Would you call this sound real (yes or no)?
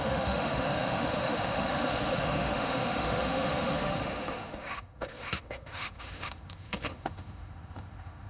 no